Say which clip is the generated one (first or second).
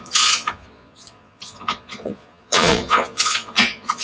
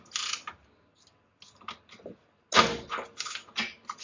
first